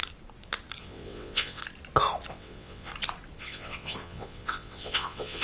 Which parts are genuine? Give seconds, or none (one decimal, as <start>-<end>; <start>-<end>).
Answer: 0.0-0.8; 1.6-2.3; 2.9-3.4